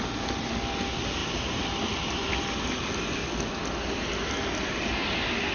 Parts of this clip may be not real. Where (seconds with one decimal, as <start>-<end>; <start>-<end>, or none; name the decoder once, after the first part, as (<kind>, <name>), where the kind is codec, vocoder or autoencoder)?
none